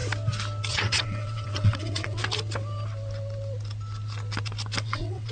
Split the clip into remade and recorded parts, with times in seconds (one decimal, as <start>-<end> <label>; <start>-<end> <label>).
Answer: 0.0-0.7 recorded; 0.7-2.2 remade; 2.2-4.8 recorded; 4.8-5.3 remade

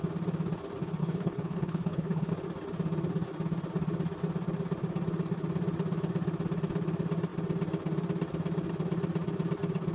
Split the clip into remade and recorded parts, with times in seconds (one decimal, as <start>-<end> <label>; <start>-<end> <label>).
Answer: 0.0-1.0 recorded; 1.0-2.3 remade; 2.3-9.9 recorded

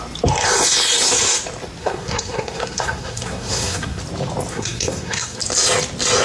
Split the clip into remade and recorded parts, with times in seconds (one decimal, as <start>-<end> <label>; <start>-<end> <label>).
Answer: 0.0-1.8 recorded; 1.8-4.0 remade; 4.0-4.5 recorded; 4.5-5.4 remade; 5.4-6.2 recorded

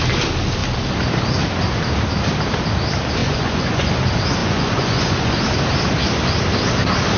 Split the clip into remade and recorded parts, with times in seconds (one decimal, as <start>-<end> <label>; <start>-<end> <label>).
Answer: 0.0-3.2 recorded; 3.2-3.9 remade; 3.9-4.4 recorded; 4.4-5.4 remade; 5.4-7.2 recorded

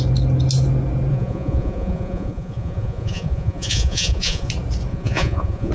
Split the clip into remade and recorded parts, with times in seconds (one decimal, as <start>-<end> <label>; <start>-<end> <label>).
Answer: 0.0-1.1 recorded; 1.1-4.5 remade; 4.5-4.9 recorded; 4.9-5.7 remade